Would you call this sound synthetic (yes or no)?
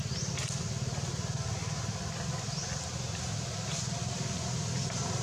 no